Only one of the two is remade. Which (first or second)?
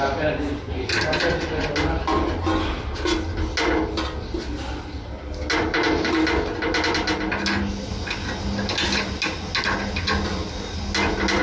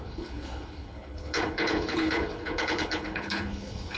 second